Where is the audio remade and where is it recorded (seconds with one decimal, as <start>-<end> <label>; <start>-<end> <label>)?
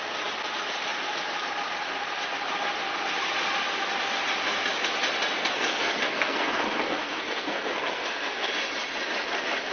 0.0-5.4 recorded; 5.4-8.5 remade; 8.5-9.7 recorded